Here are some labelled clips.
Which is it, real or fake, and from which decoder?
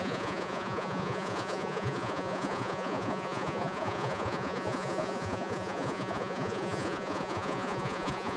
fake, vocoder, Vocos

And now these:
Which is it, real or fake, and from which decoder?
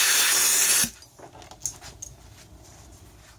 real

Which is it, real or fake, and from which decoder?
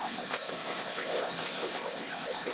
fake, codec, ZipCodec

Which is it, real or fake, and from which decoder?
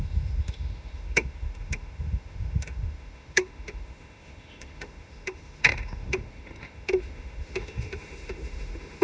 fake, autoencoder, DAC-VAE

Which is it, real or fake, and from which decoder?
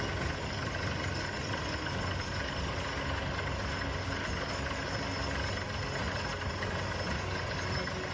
real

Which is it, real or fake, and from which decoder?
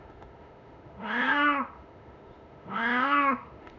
fake, autoencoder, DAC-VAE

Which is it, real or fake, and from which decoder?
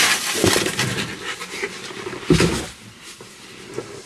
real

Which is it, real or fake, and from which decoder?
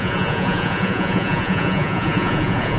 fake, vocoder, Vocos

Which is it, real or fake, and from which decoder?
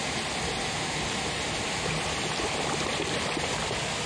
real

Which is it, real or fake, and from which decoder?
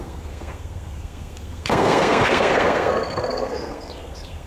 fake, codec, SNAC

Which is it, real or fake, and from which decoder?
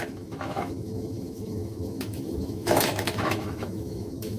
fake, autoencoder, DAC-VAE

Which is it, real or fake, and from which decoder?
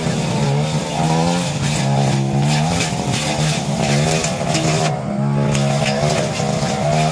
real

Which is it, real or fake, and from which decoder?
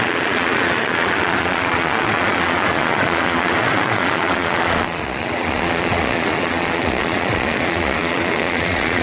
fake, vocoder, Vocos